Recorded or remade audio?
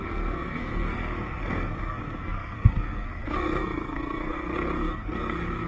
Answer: remade